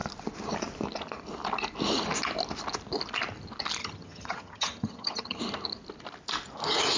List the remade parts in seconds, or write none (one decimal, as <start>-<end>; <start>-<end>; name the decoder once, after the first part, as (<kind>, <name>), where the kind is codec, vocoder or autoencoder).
3.8-5.4 (vocoder, HiFi-GAN)